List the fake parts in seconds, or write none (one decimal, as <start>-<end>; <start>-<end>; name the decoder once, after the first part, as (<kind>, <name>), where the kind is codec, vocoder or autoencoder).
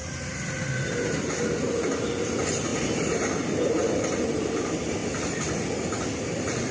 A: none